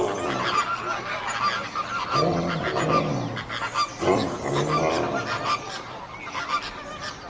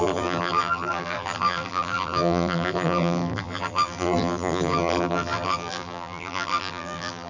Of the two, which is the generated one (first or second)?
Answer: second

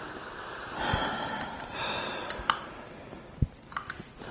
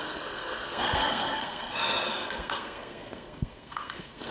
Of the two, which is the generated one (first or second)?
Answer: second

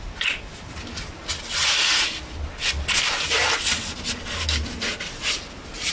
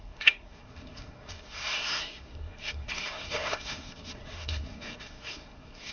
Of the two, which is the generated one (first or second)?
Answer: second